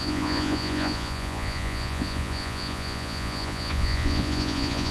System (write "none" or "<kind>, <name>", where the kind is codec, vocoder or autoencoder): vocoder, Vocos